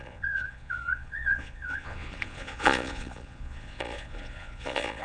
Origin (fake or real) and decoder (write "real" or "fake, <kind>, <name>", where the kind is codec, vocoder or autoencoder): fake, vocoder, Vocos